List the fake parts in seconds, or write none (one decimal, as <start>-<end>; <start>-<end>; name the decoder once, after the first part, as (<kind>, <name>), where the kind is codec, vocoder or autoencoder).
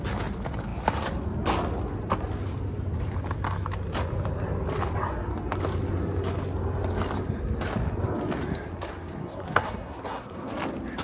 9.2-10.5 (codec, SNAC)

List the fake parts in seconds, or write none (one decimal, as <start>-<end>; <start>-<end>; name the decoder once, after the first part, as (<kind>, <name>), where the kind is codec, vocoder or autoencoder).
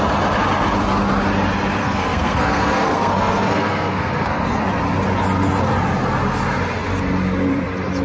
1.8-4.4 (codec, SNAC)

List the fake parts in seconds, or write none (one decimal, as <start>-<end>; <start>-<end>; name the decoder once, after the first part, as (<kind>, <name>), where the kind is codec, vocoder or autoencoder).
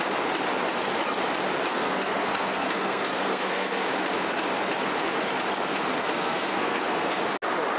1.7-3.9 (codec, SNAC); 6.1-7.2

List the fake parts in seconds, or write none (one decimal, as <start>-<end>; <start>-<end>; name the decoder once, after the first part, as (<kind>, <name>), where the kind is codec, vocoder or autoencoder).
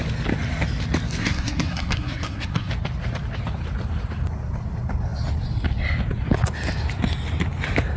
1.2-2.7 (codec, SNAC)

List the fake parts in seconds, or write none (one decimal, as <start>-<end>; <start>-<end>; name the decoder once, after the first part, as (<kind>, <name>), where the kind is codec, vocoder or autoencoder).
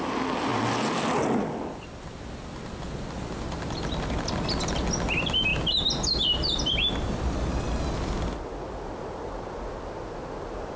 none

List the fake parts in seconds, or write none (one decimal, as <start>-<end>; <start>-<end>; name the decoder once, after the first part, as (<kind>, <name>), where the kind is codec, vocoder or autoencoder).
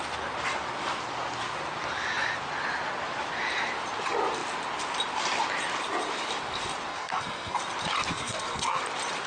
6.9-7.6 (codec, SNAC); 8.1-8.8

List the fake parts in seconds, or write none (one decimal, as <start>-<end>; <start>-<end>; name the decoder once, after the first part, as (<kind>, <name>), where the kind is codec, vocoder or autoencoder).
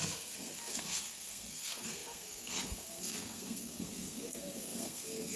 0.0-5.4 (codec, SNAC)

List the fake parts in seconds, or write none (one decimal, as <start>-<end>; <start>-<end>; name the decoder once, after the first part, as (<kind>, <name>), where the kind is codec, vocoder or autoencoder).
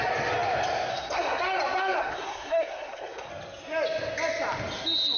0.9-1.4 (codec, SNAC); 2.0-3.3